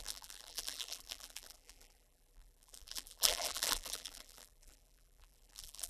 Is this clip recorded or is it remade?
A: remade